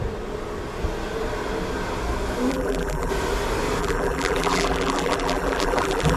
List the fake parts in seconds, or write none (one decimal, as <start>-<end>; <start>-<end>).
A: 2.5-3.1; 3.8-6.2